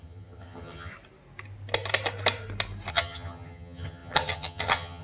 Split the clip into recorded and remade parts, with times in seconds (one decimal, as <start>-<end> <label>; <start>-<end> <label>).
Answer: 0.0-0.9 remade; 0.9-2.9 recorded; 2.9-5.0 remade